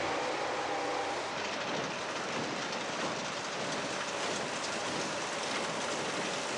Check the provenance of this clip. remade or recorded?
recorded